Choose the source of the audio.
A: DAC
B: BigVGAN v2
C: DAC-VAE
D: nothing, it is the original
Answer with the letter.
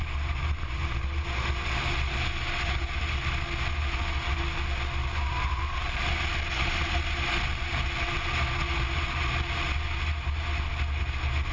D